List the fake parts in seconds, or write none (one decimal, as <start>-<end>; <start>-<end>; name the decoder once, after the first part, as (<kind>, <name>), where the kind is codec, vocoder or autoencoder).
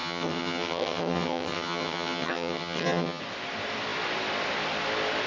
0.0-3.2 (vocoder, HiFi-GAN)